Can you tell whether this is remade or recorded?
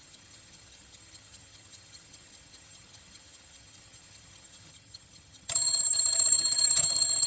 remade